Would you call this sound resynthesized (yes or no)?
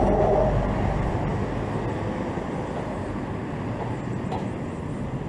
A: no